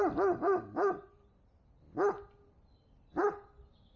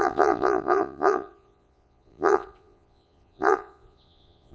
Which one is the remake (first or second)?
second